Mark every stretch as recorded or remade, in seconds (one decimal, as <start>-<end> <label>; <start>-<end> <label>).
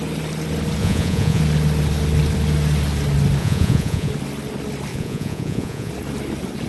0.0-0.8 recorded; 0.8-1.4 remade; 1.4-3.4 recorded; 3.4-4.1 remade; 4.1-4.9 recorded; 4.9-5.9 remade; 5.9-6.7 recorded